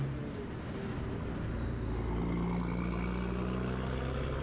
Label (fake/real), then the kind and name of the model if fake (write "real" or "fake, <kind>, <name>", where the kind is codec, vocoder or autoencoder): real